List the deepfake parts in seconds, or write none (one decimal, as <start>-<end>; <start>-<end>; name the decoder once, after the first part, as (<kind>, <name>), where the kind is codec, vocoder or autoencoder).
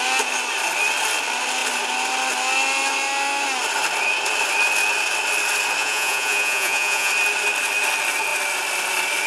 5.8-7.1 (vocoder, Vocos)